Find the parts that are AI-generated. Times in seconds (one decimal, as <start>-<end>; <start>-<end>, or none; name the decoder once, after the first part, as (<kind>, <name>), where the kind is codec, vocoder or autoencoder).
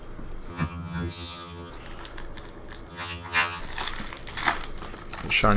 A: 0.5-1.7 (vocoder, HiFi-GAN); 2.9-3.6